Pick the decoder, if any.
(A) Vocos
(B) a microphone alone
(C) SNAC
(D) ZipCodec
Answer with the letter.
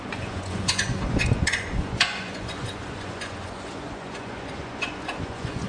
A